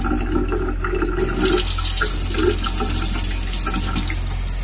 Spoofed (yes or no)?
no